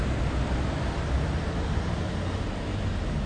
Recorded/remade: recorded